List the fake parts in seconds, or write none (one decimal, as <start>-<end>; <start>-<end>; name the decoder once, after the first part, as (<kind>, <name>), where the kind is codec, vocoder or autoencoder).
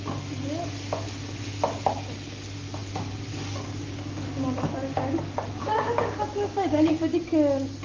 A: 5.6-6.9 (codec, DAC)